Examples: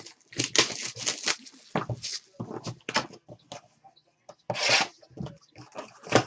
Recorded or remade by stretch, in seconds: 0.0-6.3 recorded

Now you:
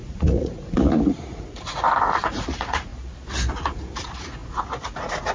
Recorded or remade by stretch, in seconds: 0.0-2.9 remade; 2.9-3.5 recorded; 3.5-5.3 remade

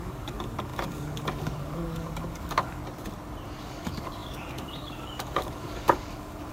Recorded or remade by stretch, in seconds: 0.0-2.8 remade; 2.8-3.6 recorded; 3.6-6.5 remade

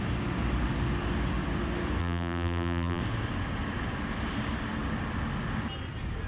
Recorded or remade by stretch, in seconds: 0.0-2.0 recorded; 2.0-3.0 remade; 3.0-6.3 recorded

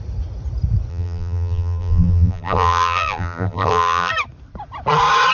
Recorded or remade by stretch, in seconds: 0.0-0.9 recorded; 0.9-4.1 remade; 4.1-5.3 recorded